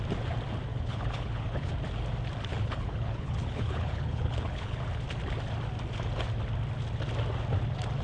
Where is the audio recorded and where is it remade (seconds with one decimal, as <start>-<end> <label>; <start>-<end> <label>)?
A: 0.0-0.7 recorded; 0.7-1.7 remade; 1.7-2.5 recorded; 2.5-4.8 remade; 4.8-8.0 recorded